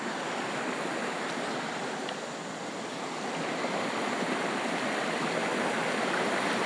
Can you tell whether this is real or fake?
real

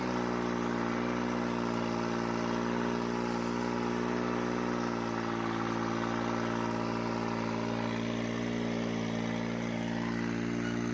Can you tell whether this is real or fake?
real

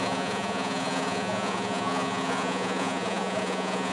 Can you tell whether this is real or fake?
fake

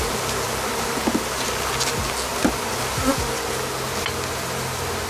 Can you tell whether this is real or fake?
real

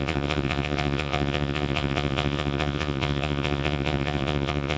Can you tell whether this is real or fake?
fake